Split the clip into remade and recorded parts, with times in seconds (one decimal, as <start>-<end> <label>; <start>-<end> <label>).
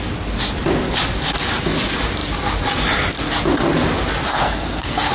0.0-4.3 recorded; 4.3-5.1 remade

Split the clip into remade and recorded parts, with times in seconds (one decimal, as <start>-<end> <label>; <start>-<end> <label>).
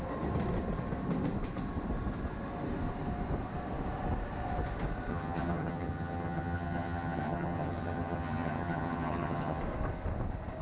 0.0-5.1 recorded; 5.1-9.6 remade; 9.6-10.6 recorded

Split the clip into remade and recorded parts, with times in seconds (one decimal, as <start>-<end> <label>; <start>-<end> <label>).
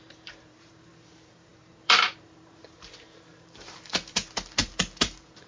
0.0-5.5 remade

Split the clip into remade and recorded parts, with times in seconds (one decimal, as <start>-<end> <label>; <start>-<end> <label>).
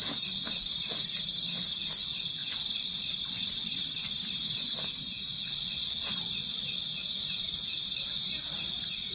0.0-2.4 recorded; 2.4-4.6 remade; 4.6-5.3 recorded; 5.3-6.8 remade; 6.8-9.1 recorded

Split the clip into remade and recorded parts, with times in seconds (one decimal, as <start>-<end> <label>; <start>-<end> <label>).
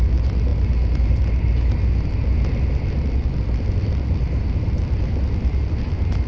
0.0-6.3 recorded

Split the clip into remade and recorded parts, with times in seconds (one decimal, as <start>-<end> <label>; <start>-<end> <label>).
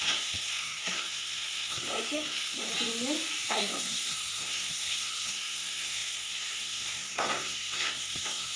0.0-2.7 remade; 2.7-3.5 recorded; 3.5-8.6 remade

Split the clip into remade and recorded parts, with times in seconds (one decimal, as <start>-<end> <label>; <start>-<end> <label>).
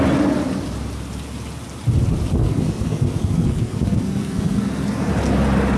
0.0-2.4 recorded; 2.4-5.1 remade; 5.1-5.8 recorded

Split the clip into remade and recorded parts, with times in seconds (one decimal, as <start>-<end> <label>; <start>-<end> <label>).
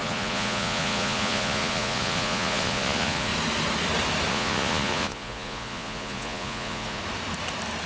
0.0-3.3 remade; 3.3-4.3 recorded; 4.3-7.0 remade; 7.0-7.9 recorded